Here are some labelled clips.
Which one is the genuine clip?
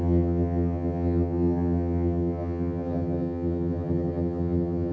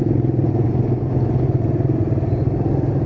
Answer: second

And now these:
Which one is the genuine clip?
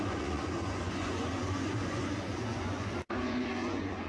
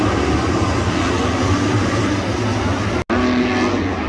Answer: second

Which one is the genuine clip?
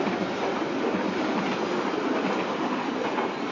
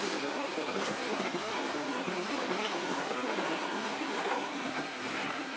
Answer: first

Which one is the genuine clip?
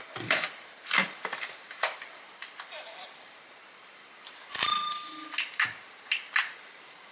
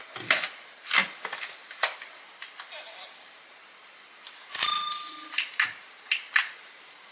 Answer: second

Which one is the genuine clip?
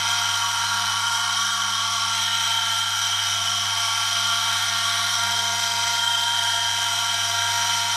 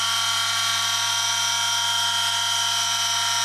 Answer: second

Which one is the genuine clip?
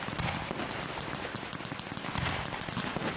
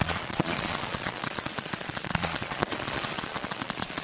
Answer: first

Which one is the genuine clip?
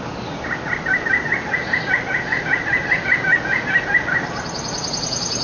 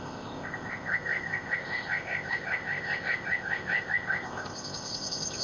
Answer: first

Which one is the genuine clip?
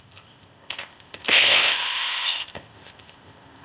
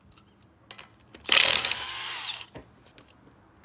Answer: second